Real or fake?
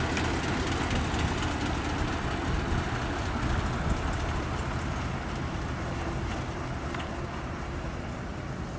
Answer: real